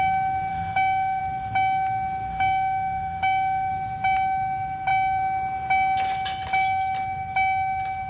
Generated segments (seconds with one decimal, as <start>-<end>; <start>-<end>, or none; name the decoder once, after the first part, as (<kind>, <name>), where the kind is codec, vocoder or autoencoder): 0.5-1.2 (autoencoder, DAC-VAE); 2.3-3.7

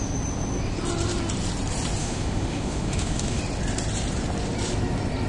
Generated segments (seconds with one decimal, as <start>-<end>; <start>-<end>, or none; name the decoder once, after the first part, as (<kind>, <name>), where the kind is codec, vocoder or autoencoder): 2.0-3.4 (autoencoder, DAC-VAE)